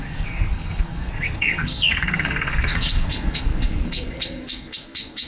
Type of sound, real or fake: fake